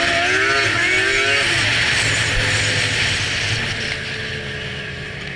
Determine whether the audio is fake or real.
real